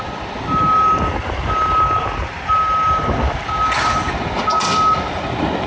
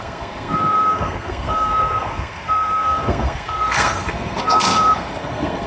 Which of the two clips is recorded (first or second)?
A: first